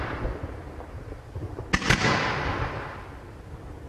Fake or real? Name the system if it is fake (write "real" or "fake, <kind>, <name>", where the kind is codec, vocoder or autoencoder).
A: real